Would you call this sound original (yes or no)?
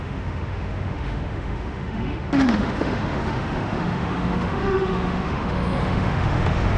no